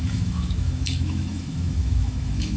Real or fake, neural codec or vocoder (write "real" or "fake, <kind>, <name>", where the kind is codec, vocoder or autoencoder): fake, autoencoder, DAC-VAE